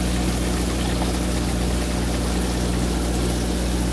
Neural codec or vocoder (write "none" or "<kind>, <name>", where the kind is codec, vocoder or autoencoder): none